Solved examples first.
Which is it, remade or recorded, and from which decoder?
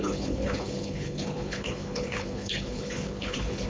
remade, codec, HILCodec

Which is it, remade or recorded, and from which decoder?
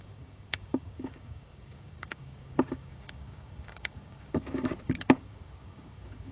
remade, codec, DAC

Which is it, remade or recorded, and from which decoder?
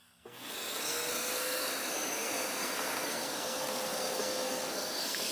remade, codec, SNAC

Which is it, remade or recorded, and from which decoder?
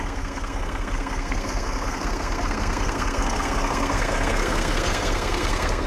remade, codec, SNAC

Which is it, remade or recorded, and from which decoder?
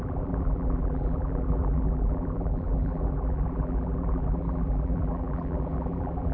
remade, vocoder, BigVGAN v2